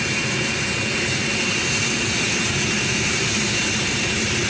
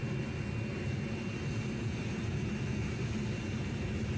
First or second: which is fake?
first